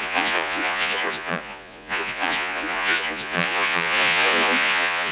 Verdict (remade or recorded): remade